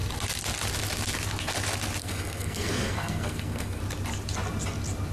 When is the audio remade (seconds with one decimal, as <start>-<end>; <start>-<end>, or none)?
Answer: 2.0-3.8